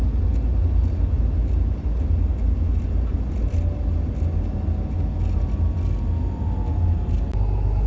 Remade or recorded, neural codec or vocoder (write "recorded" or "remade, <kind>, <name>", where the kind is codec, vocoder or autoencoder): recorded